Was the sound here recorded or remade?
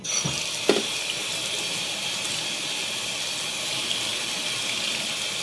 recorded